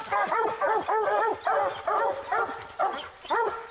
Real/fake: real